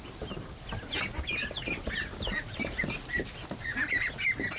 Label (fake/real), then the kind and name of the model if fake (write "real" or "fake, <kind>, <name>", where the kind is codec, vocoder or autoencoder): real